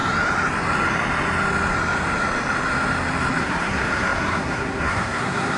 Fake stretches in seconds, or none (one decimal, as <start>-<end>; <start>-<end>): 3.4-5.6